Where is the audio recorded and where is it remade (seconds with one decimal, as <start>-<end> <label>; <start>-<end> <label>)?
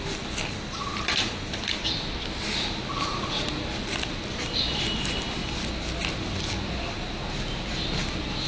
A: 0.0-8.5 recorded